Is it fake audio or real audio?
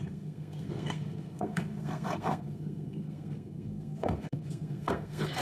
fake